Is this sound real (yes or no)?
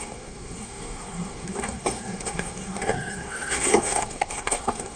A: no